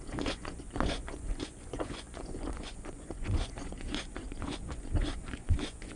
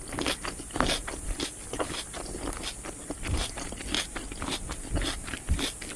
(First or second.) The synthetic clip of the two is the first